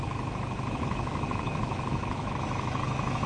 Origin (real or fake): fake